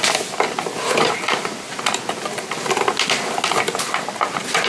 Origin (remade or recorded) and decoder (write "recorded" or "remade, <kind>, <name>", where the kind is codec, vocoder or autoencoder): recorded